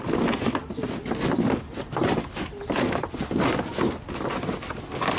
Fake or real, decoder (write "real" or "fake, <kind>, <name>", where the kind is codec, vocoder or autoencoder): real